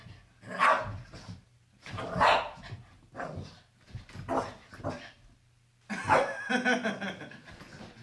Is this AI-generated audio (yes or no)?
no